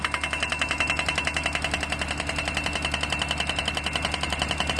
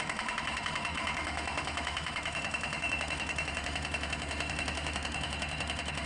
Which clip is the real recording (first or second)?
first